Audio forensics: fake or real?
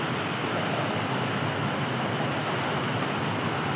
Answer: real